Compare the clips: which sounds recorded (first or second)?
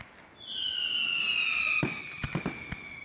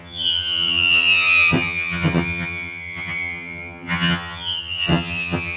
first